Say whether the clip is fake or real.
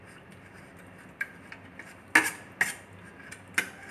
real